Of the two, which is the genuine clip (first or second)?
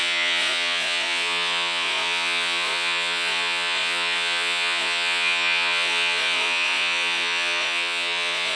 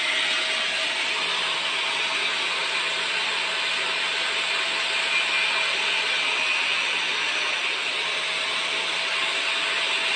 second